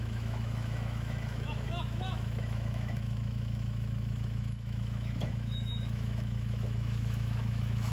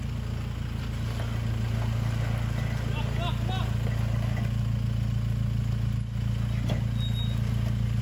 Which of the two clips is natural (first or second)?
second